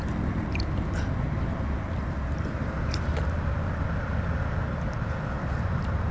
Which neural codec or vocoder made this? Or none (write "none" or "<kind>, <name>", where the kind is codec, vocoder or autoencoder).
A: none